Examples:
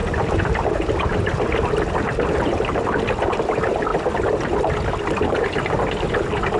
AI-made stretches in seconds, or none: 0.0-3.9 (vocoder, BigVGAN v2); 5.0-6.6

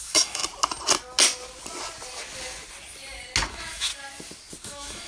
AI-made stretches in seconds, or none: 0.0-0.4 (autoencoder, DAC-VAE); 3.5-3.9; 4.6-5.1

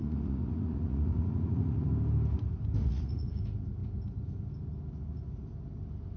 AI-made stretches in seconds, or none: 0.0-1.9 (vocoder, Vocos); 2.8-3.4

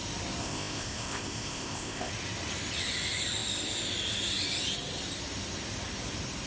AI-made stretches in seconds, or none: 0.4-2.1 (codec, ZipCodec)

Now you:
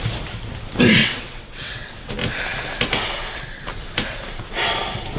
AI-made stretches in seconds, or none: 1.0-2.1 (vocoder, WaveNeXt)